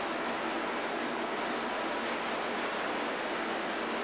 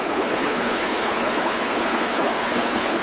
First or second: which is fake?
second